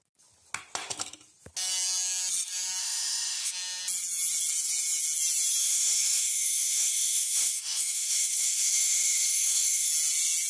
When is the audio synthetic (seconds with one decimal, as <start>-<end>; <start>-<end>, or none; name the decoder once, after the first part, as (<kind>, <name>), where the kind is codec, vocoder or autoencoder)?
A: 2.8-3.5 (autoencoder, DAC-VAE); 5.6-9.9

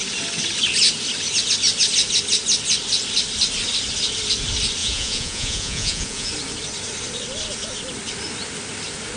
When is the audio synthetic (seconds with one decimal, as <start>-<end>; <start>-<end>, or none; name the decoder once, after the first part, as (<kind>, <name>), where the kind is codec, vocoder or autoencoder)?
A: 4.8-6.3 (vocoder, Vocos)

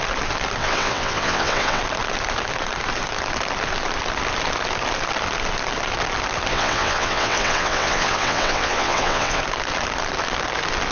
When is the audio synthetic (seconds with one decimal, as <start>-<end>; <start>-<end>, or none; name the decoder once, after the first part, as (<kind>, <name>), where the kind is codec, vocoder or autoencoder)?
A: 0.6-1.8 (vocoder, WaveNeXt); 6.5-9.4

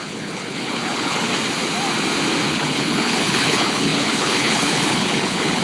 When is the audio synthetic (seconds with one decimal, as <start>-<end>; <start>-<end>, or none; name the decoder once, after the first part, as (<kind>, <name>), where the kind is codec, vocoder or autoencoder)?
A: 0.0-1.3 (codec, HILCodec); 2.5-5.6

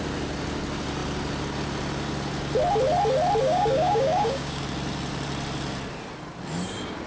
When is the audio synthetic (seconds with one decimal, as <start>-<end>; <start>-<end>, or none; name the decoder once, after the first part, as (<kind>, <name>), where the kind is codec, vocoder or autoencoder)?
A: 3.4-4.6 (codec, DAC)

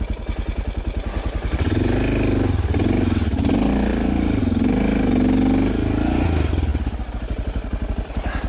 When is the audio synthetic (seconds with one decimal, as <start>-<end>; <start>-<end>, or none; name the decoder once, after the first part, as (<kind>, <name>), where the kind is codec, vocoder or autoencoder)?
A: none

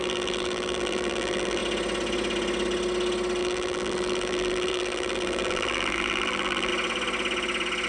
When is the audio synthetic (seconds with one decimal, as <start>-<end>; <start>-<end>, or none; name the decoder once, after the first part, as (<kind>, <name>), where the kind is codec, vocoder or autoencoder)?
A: 0.0-1.6 (vocoder, BigVGAN v2); 3.4-6.7

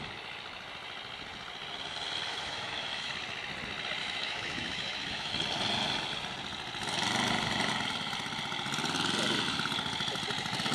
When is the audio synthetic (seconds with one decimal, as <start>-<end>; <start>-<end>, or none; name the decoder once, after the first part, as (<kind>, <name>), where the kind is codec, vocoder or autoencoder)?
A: 2.3-3.1 (autoencoder, DAC-VAE); 4.0-5.3